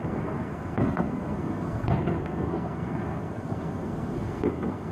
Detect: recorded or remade remade